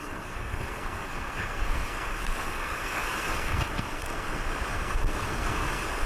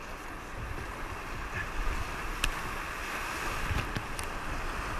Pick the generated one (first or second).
first